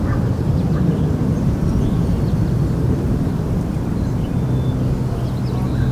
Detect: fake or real real